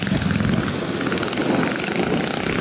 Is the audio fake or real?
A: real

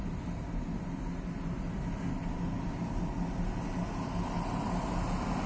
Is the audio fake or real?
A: real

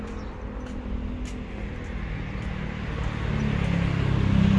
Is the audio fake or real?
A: real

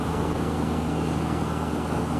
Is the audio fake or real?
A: fake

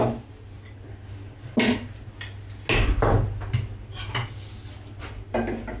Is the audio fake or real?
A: real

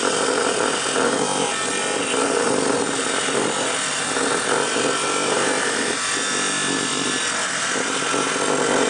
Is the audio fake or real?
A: real